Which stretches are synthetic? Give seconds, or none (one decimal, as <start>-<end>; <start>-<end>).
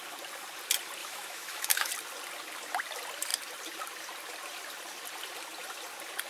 1.0-1.9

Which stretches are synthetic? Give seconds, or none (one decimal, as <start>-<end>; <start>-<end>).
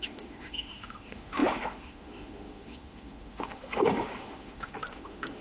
0.0-5.4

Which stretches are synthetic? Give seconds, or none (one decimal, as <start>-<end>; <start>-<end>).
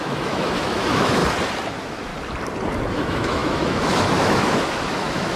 0.0-1.2; 1.7-2.1; 2.9-5.4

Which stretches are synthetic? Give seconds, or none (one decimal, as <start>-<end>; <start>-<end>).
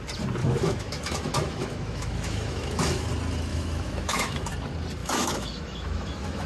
0.4-3.1; 3.5-4.5; 5.0-6.5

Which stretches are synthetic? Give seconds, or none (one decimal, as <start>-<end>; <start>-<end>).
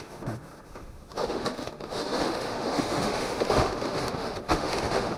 0.0-5.2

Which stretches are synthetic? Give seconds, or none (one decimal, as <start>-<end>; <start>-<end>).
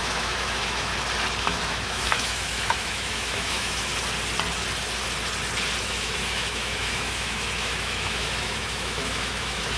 0.0-0.9; 1.4-3.9; 5.8-9.8